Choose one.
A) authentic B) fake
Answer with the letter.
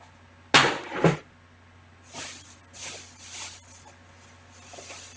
A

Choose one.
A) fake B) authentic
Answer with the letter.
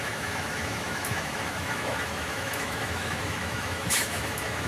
A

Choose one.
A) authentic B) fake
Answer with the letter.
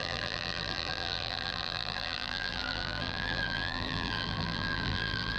B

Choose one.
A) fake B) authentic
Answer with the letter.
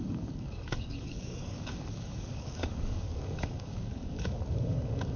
A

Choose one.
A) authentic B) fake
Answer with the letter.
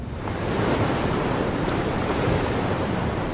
B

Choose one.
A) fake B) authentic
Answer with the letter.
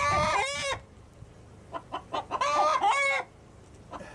B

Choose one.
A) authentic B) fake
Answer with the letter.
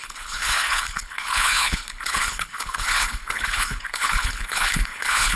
B